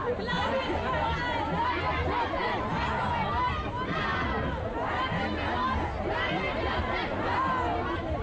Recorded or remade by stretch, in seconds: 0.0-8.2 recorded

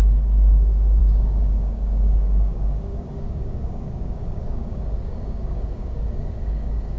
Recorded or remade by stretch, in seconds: 0.0-7.0 remade